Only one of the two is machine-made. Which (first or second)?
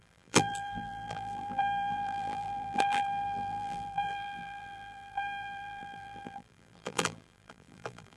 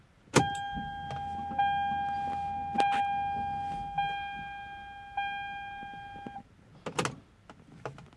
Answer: first